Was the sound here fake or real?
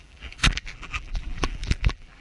fake